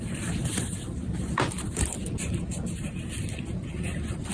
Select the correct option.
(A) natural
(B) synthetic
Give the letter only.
B